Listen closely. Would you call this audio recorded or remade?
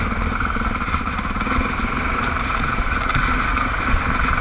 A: remade